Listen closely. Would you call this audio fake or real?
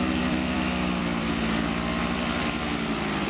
fake